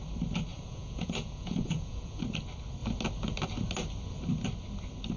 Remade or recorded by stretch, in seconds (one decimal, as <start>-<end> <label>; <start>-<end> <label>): 0.0-0.5 recorded; 0.5-2.2 remade; 2.2-5.2 recorded